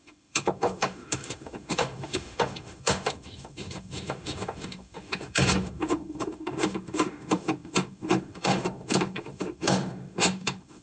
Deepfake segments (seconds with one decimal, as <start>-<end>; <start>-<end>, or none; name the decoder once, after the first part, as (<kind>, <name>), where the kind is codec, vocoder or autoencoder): 0.0-10.8 (autoencoder, DAC-VAE)